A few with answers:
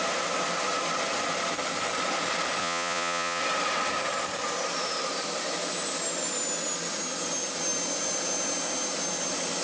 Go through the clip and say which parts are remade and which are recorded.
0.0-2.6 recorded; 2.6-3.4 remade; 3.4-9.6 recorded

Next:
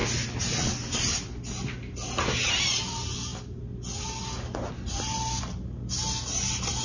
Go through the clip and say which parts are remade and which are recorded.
0.0-6.8 recorded

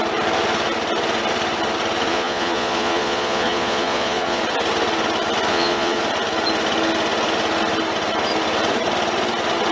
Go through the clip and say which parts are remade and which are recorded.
0.0-2.1 recorded; 2.1-4.4 remade; 4.4-5.5 recorded; 5.5-6.0 remade; 6.0-9.7 recorded

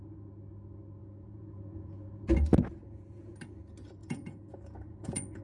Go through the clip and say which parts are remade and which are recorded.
0.0-1.0 recorded; 1.0-2.2 remade; 2.2-2.6 recorded; 2.6-3.3 remade; 3.3-4.0 recorded; 4.0-5.4 remade

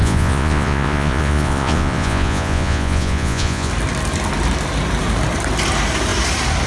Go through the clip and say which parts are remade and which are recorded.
0.0-3.7 remade; 3.7-6.7 recorded